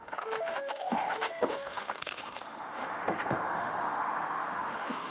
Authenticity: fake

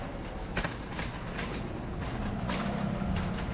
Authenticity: real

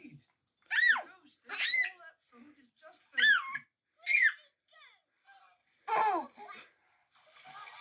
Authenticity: real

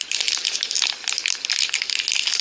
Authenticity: real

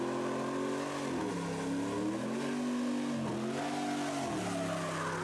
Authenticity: real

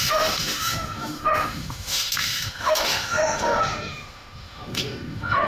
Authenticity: fake